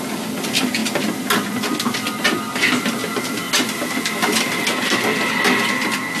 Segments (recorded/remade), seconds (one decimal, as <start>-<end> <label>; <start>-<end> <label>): 0.0-6.2 recorded